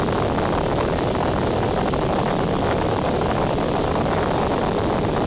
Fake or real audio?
real